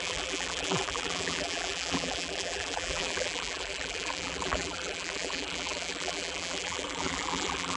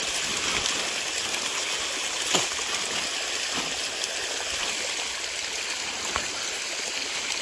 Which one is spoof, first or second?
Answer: first